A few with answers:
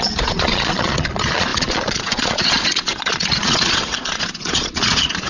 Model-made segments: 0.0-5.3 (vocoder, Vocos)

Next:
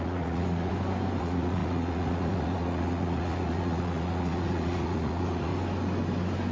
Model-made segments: 0.0-0.7 (vocoder, Vocos); 1.2-5.5